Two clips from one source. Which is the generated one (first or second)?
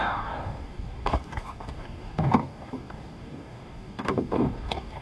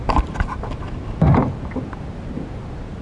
first